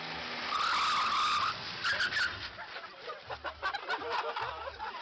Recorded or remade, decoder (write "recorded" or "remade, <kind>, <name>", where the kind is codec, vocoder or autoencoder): recorded